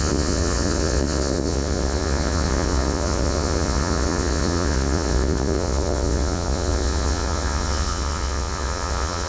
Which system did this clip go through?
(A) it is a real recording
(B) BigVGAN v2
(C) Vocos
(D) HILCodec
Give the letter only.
C